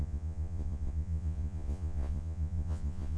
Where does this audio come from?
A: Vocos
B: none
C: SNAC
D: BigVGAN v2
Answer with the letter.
A